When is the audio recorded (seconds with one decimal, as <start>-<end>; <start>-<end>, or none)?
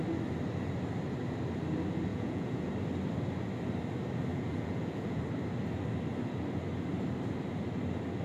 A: 0.0-2.1; 2.7-4.3; 5.2-8.2